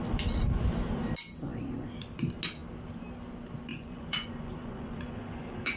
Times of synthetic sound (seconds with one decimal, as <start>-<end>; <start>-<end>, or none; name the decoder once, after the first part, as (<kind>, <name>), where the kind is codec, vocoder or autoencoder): 3.7-5.8 (vocoder, Vocos)

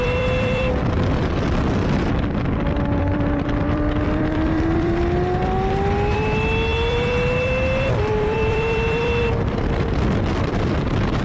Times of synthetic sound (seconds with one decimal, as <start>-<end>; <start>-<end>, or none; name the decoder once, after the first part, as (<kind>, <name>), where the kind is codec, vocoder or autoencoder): 0.0-11.2 (vocoder, BigVGAN v2)

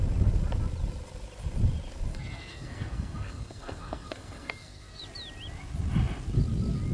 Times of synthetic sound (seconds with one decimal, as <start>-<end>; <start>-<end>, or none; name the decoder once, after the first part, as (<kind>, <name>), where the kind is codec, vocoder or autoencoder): 2.1-5.0 (codec, SNAC)

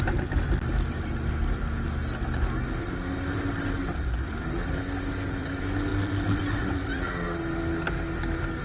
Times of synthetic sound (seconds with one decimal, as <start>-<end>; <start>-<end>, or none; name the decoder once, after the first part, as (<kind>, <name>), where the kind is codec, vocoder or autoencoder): 0.0-2.0 (vocoder, BigVGAN v2); 3.2-8.6

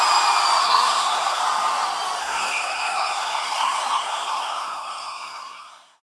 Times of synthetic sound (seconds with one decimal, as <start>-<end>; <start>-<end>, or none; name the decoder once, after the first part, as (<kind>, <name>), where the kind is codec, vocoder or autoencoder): 0.6-1.4 (codec, SNAC); 2.2-6.0

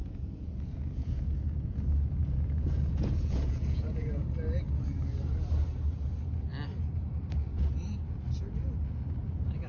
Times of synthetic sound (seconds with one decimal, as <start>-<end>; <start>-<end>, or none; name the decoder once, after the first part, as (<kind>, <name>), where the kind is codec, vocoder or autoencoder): 0.0-1.8 (vocoder, Vocos); 2.2-4.2

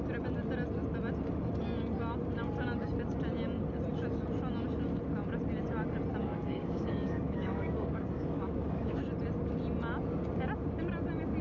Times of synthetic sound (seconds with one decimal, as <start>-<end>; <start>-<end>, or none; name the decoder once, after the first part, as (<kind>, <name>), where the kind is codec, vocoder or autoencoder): 6.2-9.0 (codec, DAC)